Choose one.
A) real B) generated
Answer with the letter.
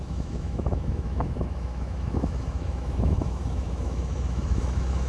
B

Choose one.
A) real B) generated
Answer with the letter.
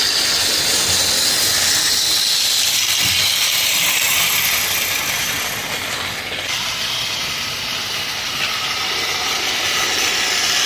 A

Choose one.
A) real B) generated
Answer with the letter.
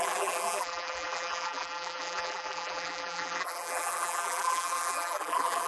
B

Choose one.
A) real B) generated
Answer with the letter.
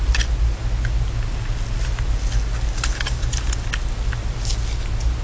A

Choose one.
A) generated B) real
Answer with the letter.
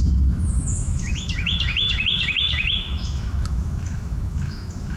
A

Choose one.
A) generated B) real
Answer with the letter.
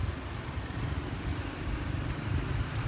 A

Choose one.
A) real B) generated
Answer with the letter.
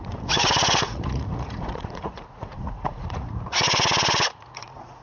B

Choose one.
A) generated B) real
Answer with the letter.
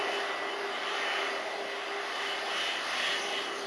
B